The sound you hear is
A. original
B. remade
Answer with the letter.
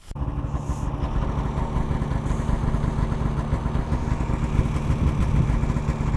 A